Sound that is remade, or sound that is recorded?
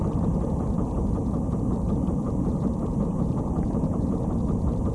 remade